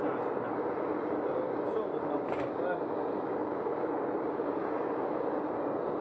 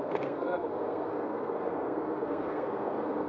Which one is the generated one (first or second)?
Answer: second